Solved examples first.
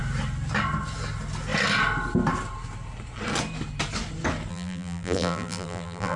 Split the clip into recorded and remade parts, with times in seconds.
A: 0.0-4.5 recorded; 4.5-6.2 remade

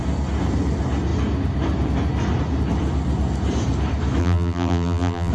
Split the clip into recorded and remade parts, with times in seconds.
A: 0.0-4.2 recorded; 4.2-5.3 remade

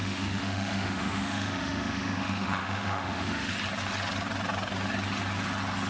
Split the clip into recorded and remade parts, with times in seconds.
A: 0.0-3.5 remade; 3.5-5.9 recorded

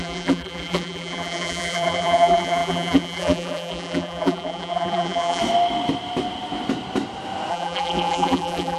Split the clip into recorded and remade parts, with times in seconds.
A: 0.0-5.4 remade; 5.4-7.5 recorded; 7.5-8.8 remade

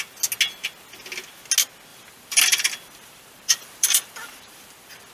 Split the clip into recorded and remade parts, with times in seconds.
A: 0.0-1.9 recorded; 1.9-5.1 remade

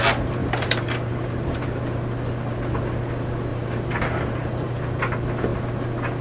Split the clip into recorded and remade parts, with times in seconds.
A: 0.0-0.4 recorded; 0.4-1.6 remade; 1.6-3.5 recorded; 3.5-4.7 remade; 4.7-6.2 recorded

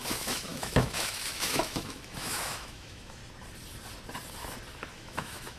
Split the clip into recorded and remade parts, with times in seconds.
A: 0.0-3.2 remade; 3.2-4.9 recorded; 4.9-5.6 remade

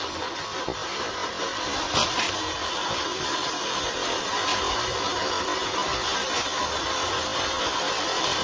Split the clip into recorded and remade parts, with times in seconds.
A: 0.0-8.4 recorded